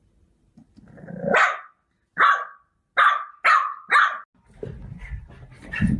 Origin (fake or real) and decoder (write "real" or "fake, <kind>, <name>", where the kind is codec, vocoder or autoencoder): real